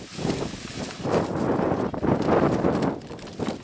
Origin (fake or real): real